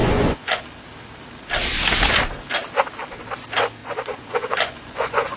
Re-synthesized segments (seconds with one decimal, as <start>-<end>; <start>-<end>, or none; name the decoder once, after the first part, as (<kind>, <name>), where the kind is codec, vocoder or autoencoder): 0.0-0.6 (vocoder, Vocos); 3.8-5.4